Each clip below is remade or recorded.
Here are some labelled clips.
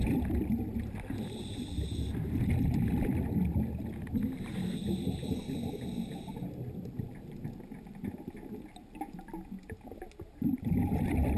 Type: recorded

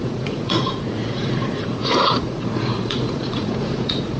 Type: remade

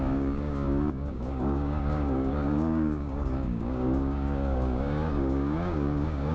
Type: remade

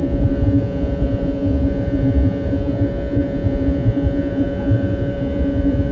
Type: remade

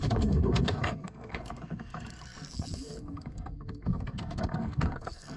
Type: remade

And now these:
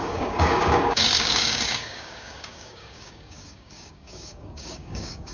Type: remade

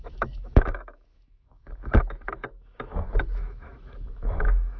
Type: remade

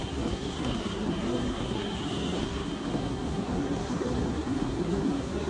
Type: remade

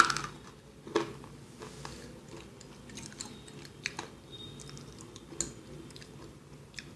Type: recorded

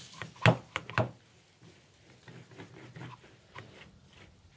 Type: recorded